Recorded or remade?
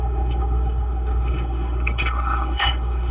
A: remade